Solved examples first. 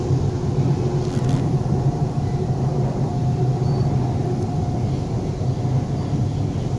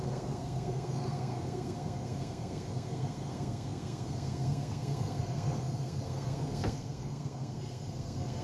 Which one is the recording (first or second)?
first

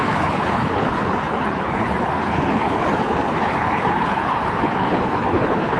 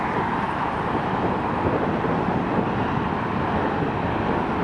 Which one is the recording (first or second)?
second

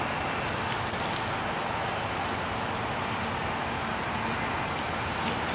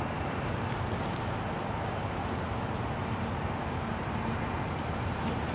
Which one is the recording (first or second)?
first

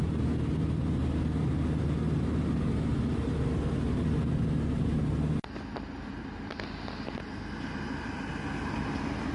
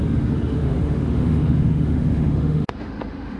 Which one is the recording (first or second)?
first